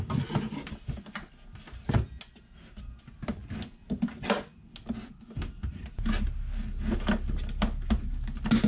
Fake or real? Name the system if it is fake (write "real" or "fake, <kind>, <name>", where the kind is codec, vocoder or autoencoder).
real